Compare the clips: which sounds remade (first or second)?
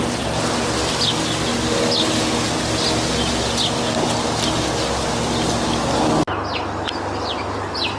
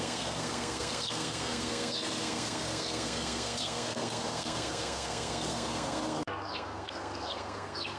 second